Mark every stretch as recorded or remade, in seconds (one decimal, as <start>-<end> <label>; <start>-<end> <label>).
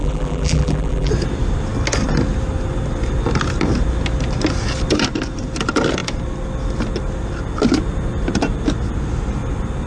0.0-1.1 remade; 1.1-9.9 recorded